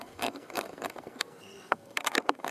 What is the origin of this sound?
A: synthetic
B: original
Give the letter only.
A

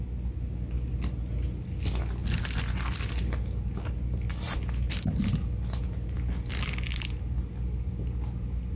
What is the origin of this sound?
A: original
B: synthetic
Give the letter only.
A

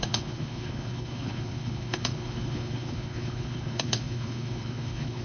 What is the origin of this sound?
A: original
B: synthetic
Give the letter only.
B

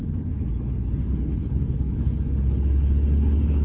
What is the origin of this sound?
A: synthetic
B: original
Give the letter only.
A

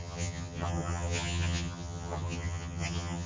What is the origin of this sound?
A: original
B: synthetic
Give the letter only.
B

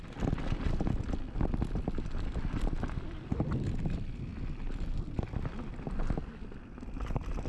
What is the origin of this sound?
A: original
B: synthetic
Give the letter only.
A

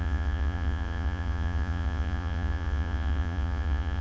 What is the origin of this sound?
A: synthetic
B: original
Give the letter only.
A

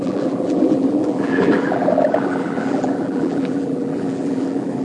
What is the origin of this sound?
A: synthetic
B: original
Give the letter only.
A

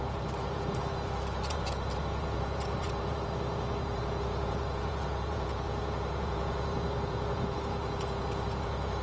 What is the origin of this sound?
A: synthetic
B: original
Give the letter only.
A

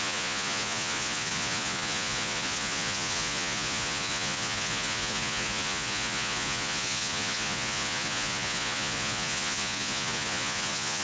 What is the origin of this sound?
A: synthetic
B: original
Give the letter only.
A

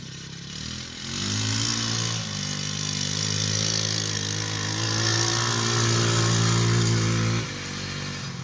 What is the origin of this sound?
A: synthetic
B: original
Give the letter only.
B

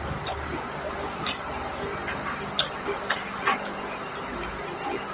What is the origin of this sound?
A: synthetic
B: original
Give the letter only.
B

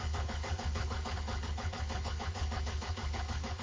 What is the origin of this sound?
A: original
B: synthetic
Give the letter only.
B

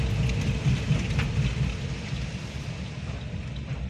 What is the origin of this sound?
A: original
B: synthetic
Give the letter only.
A